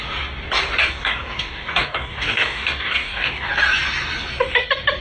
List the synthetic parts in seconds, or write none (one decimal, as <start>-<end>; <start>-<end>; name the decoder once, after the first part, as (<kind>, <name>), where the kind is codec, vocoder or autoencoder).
0.8-3.5 (codec, DAC)